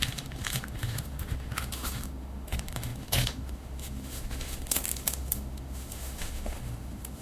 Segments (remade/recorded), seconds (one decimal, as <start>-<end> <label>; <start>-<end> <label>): 0.0-7.2 remade